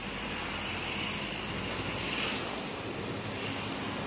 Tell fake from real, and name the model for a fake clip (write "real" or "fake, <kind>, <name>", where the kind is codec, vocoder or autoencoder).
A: real